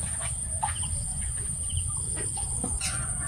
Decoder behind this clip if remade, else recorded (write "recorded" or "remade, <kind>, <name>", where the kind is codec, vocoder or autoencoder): remade, vocoder, Vocos